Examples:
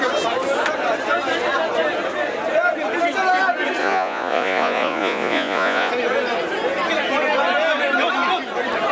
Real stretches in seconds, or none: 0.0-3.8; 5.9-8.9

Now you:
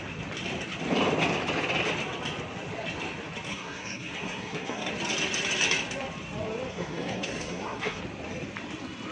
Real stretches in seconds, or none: 0.0-3.5; 4.9-6.7; 8.0-9.1

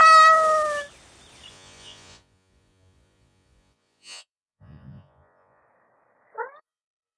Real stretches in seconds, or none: 0.0-1.5; 5.6-6.6